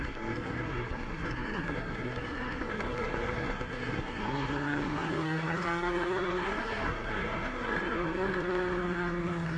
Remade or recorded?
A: remade